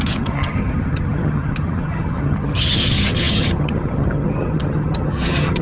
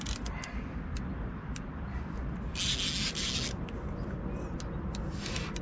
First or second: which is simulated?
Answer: first